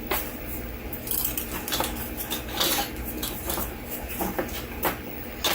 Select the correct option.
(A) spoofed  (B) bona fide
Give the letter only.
B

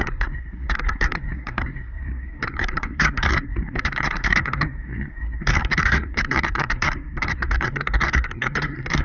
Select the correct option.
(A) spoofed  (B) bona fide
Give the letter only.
A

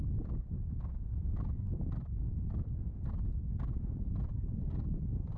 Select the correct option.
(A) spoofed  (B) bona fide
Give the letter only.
B